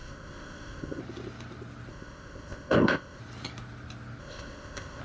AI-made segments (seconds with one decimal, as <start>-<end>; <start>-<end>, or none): 0.0-1.0; 1.9-3.2; 4.2-5.0